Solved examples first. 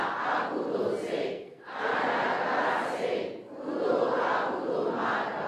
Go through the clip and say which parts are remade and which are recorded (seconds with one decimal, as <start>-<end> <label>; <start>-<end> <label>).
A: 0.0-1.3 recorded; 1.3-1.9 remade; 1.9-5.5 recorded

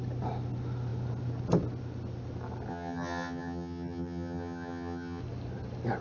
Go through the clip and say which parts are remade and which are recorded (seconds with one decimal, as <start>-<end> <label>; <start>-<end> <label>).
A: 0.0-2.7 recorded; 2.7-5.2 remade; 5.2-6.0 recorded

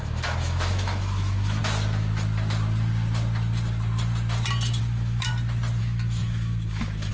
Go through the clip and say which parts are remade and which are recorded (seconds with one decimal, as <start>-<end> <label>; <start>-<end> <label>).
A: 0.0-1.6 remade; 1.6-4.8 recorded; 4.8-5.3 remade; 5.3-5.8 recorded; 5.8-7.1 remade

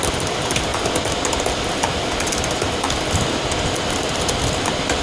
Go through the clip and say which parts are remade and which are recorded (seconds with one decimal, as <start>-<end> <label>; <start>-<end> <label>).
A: 0.0-5.0 recorded